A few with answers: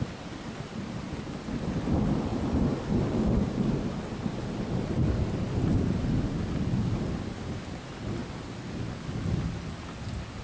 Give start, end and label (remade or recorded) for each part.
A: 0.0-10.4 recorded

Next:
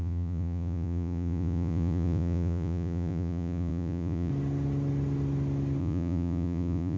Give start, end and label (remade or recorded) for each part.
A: 0.0-4.3 remade; 4.3-5.8 recorded; 5.8-7.0 remade